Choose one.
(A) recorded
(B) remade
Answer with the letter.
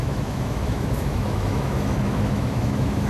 B